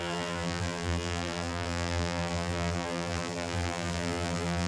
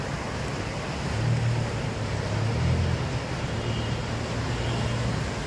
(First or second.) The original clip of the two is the second